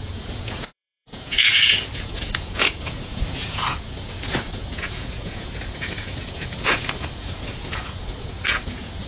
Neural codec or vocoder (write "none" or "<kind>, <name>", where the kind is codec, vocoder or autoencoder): vocoder, Vocos